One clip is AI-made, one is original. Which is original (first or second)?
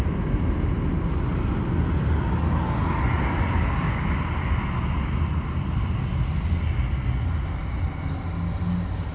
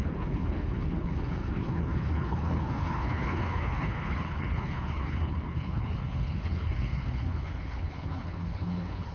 first